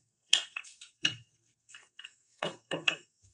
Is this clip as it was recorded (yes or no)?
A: no